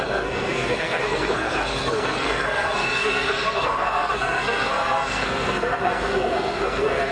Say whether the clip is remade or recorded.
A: remade